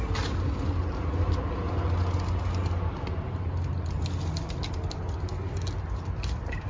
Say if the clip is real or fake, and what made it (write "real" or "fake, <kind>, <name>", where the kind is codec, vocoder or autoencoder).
real